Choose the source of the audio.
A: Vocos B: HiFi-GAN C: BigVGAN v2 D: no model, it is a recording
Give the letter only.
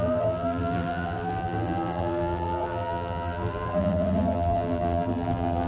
C